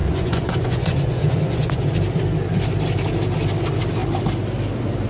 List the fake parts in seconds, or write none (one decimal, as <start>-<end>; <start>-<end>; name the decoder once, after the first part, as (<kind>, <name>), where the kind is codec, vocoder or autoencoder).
0.0-1.9 (vocoder, Vocos)